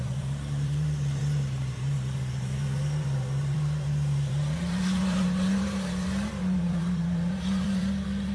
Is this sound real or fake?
fake